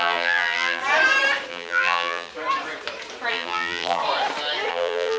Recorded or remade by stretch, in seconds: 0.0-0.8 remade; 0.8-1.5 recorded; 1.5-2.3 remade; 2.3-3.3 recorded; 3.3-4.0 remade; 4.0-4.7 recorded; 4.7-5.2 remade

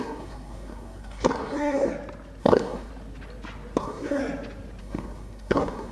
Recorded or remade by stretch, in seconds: 0.0-1.9 remade; 1.9-2.4 recorded; 2.4-2.9 remade; 2.9-3.8 recorded; 3.8-4.2 remade; 4.2-4.8 recorded; 4.8-5.9 remade